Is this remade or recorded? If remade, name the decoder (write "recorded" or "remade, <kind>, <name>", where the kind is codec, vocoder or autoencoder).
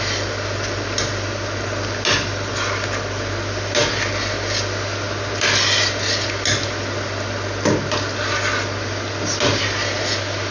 recorded